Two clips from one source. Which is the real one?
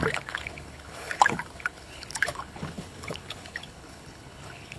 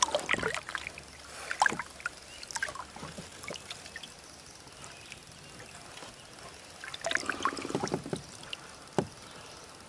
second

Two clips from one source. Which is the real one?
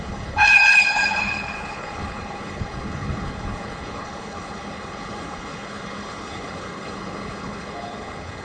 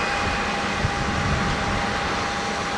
second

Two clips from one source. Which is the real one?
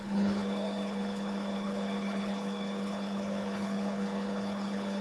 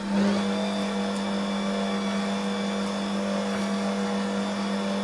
second